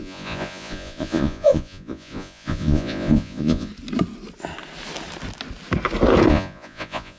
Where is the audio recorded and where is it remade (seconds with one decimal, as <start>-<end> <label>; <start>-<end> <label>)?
0.0-3.7 remade; 3.7-6.3 recorded; 6.3-7.2 remade